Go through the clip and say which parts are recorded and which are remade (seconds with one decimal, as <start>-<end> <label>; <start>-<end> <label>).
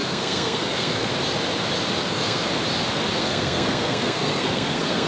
0.0-1.1 remade; 1.1-2.0 recorded; 2.0-2.5 remade; 2.5-3.2 recorded; 3.2-5.1 remade